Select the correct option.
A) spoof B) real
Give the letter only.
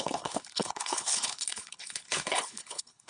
A